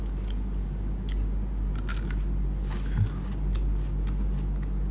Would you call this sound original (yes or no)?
yes